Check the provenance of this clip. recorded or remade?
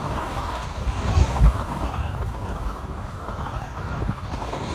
remade